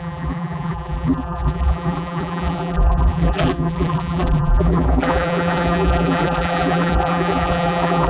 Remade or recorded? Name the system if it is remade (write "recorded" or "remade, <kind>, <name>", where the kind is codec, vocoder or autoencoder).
remade, vocoder, BigVGAN v2